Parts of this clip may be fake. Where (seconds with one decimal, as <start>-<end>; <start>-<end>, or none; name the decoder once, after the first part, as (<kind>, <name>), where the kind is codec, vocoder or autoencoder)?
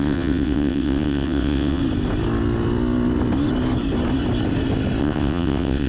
0.0-1.8 (vocoder, WaveNeXt); 5.0-5.9